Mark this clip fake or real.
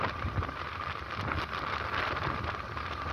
real